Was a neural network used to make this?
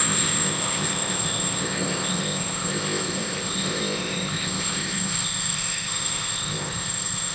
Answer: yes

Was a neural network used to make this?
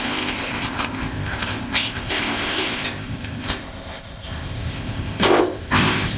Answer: yes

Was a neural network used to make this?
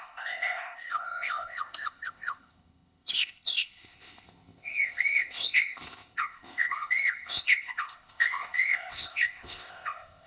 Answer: yes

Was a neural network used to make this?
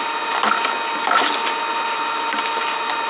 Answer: no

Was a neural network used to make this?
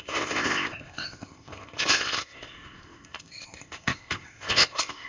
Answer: yes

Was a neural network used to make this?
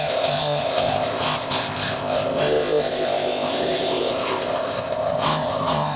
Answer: yes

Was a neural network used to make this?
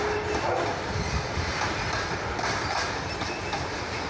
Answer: no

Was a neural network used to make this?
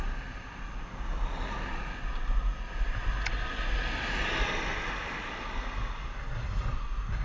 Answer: no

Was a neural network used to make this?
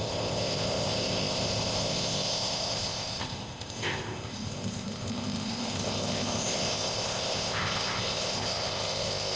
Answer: yes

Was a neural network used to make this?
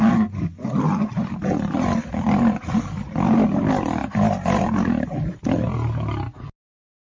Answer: no